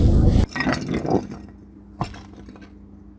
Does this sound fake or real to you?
real